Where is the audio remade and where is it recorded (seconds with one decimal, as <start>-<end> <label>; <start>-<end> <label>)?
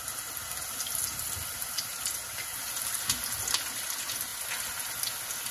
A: 0.0-5.5 recorded